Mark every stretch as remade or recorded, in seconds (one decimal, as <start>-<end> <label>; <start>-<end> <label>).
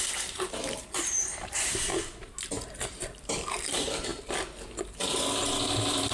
0.0-1.9 remade; 1.9-3.0 recorded; 3.0-4.1 remade; 4.1-6.1 recorded